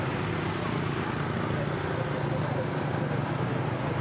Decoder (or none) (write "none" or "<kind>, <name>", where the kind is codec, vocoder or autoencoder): none